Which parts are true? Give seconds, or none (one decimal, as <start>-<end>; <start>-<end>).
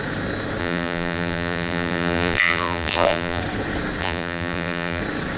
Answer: 0.0-0.6; 3.4-4.0; 5.0-5.4